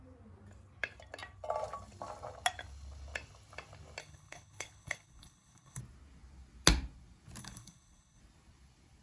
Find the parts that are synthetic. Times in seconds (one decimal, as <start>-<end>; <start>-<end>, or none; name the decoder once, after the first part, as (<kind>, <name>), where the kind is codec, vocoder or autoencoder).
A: 4.0-5.8 (codec, HILCodec); 7.4-8.2